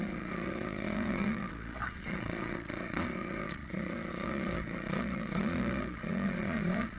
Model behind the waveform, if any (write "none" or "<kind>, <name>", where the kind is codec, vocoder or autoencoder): vocoder, Vocos